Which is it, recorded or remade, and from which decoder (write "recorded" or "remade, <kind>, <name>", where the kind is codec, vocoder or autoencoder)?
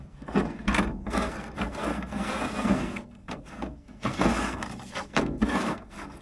remade, codec, SNAC